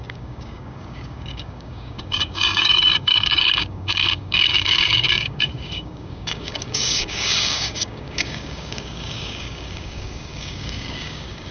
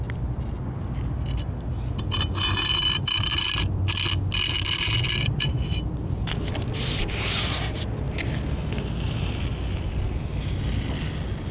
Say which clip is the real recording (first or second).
second